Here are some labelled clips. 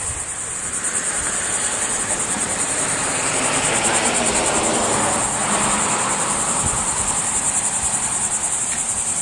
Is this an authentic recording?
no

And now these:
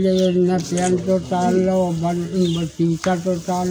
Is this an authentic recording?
yes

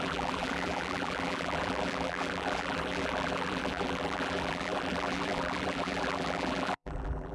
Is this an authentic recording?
no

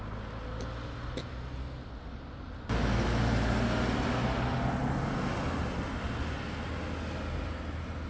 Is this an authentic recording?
yes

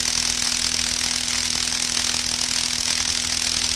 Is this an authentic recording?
yes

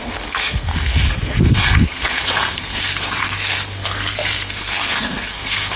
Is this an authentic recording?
no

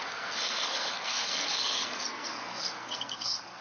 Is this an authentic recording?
no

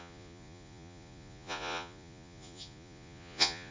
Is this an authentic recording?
no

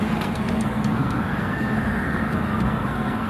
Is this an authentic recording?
no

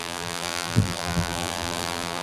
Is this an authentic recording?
no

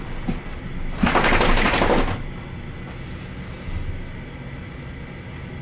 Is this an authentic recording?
yes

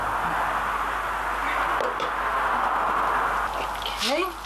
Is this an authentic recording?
yes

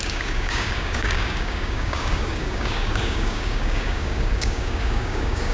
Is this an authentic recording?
no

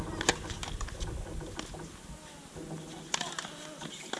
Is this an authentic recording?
yes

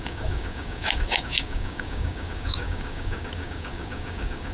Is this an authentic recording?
no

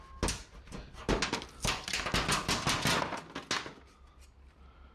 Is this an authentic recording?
yes